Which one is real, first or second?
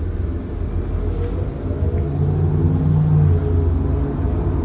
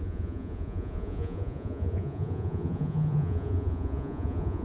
first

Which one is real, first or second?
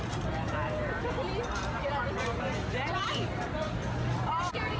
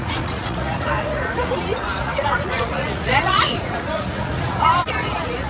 first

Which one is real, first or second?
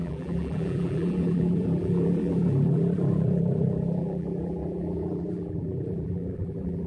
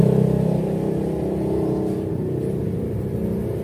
second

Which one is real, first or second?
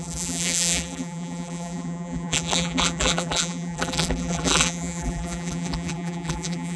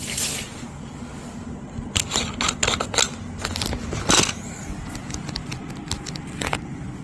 second